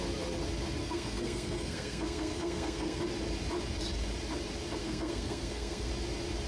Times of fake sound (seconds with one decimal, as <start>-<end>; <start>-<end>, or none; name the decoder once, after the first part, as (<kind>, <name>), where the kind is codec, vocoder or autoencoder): 0.8-3.0 (codec, SNAC); 4.8-5.9